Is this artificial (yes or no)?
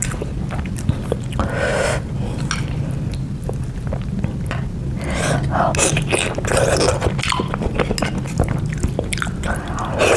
no